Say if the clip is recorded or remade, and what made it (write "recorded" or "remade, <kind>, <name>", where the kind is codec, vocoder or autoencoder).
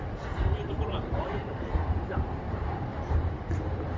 remade, vocoder, BigVGAN v2